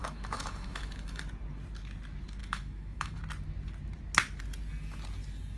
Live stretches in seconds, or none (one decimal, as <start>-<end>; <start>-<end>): 1.2-2.4; 3.2-5.6